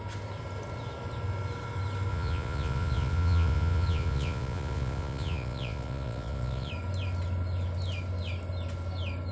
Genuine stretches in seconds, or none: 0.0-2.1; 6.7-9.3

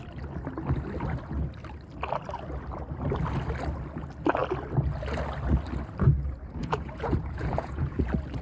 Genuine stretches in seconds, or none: 0.0-6.6; 8.0-8.4

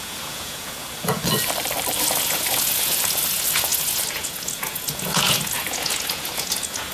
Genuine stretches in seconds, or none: 1.2-2.0

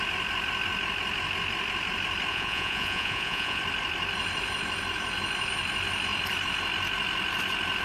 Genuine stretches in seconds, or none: 0.0-2.3; 3.6-7.8

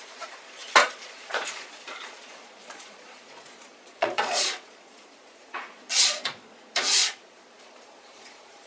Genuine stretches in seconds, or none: none

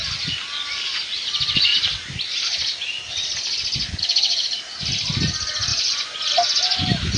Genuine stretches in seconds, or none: 0.0-5.7; 6.3-7.2